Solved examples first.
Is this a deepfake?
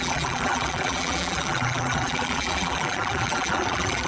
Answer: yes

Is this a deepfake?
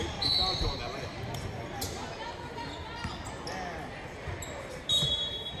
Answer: no